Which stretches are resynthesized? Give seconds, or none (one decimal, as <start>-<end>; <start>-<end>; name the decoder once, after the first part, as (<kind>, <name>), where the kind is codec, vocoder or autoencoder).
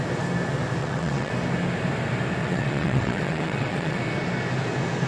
0.8-1.3 (vocoder, WaveNeXt); 2.4-4.0